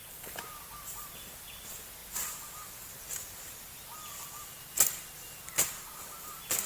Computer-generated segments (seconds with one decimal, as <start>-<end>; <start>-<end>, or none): none

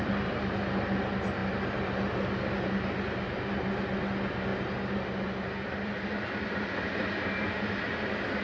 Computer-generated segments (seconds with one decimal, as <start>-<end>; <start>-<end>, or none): none

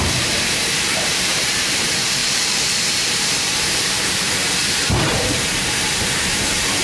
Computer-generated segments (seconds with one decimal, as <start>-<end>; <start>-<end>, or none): 0.0-6.8

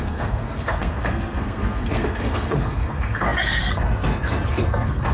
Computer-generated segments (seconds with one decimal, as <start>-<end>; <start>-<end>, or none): 0.0-5.1

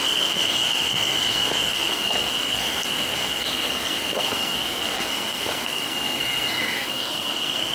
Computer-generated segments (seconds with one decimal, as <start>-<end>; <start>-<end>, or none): 0.0-7.7

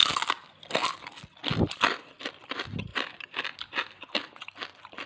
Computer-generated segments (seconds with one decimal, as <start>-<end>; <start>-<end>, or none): none

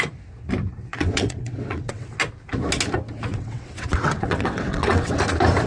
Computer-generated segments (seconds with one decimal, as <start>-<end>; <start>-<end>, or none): 0.9-2.1; 3.3-5.2

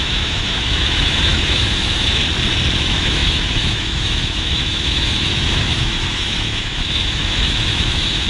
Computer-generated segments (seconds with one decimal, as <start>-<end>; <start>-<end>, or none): 0.0-2.2; 2.8-8.3